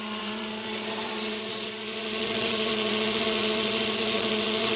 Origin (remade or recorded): remade